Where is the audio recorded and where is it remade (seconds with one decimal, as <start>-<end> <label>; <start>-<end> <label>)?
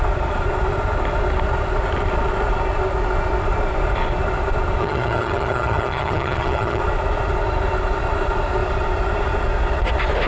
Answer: 0.0-4.8 recorded; 4.8-6.8 remade; 6.8-10.3 recorded